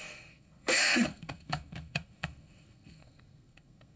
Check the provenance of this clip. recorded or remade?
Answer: remade